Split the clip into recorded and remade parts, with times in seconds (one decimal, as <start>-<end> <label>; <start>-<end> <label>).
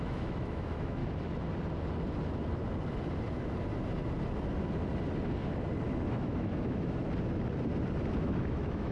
0.0-1.0 remade; 1.0-6.1 recorded; 6.1-7.0 remade; 7.0-8.2 recorded; 8.2-8.9 remade